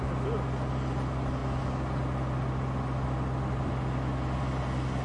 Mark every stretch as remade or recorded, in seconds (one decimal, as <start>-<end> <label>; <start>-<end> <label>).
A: 0.0-5.0 recorded